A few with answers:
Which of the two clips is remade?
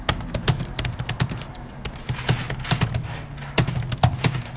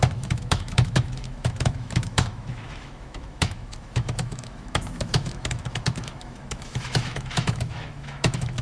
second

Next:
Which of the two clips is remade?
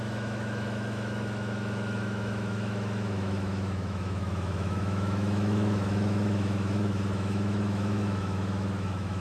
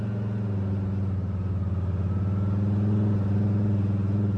first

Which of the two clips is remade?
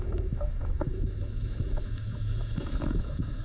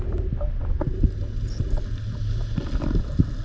first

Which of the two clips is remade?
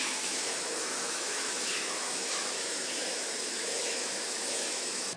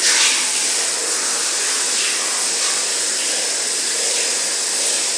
first